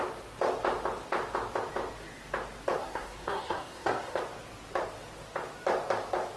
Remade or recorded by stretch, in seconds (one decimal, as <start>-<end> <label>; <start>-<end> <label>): 0.0-2.8 recorded; 2.8-4.2 remade; 4.2-6.4 recorded